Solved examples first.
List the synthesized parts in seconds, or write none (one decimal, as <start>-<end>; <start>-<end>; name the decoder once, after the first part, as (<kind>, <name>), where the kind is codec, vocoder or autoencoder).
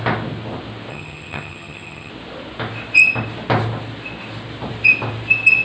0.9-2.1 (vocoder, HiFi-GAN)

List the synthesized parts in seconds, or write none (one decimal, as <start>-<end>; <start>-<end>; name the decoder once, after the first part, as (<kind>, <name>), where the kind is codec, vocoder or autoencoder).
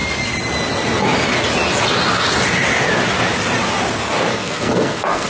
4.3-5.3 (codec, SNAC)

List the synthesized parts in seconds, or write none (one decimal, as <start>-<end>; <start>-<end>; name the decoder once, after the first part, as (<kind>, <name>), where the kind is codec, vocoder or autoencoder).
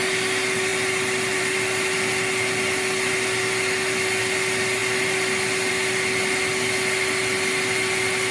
none